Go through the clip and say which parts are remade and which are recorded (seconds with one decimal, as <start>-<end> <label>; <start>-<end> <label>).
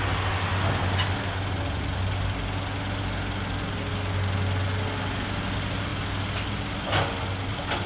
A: 0.0-7.9 recorded